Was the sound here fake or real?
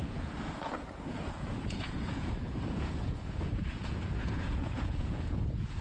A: fake